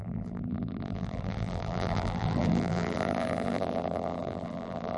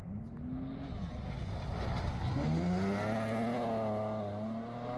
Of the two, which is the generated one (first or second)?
first